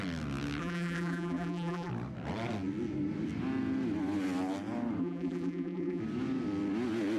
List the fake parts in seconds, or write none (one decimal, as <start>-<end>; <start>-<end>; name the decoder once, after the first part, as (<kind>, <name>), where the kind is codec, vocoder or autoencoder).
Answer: 0.6-1.9 (vocoder, BigVGAN v2); 5.0-6.0